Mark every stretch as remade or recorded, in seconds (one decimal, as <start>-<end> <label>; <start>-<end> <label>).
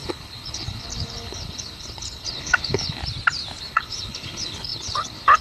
0.0-3.0 remade; 3.0-3.6 recorded; 3.6-5.4 remade